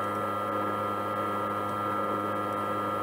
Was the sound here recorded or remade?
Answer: recorded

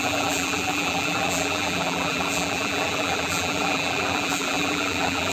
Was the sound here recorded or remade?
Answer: remade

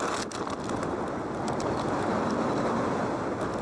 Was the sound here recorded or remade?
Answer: recorded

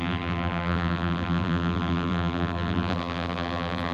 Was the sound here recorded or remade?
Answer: remade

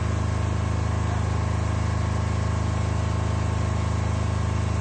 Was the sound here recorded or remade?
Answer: recorded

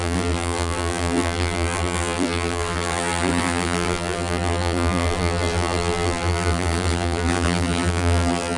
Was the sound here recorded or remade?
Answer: remade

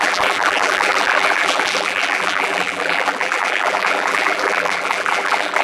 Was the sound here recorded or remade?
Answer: remade